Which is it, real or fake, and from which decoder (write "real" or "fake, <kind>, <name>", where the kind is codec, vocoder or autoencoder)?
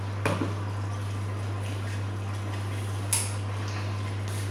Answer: real